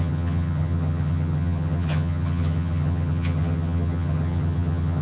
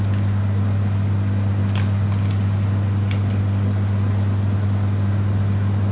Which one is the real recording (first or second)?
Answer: second